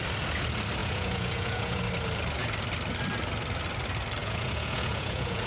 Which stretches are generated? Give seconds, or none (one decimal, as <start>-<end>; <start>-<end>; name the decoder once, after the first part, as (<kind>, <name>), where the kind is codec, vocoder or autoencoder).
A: 0.8-1.8 (vocoder, Vocos); 4.2-5.5